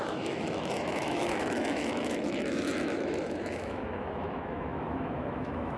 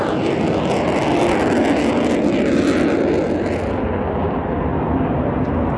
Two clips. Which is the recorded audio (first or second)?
second